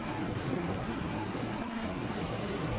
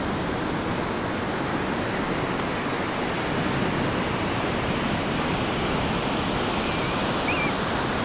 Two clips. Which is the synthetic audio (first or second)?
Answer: first